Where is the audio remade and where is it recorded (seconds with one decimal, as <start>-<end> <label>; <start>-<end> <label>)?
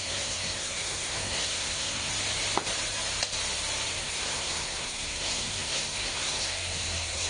0.0-2.1 remade; 2.1-3.9 recorded; 3.9-7.3 remade